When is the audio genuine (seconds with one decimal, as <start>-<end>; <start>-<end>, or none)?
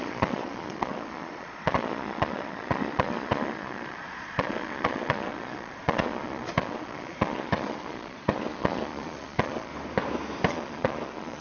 9.7-10.5